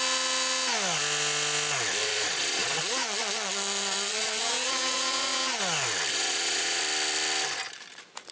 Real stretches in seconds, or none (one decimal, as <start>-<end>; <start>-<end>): 0.0-2.0; 5.6-6.1; 6.8-8.3